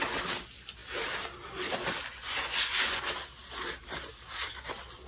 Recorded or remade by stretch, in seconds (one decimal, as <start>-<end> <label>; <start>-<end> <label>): 0.0-2.1 recorded; 2.1-3.0 remade; 3.0-5.1 recorded